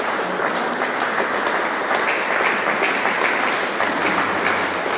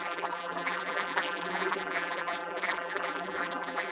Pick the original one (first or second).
first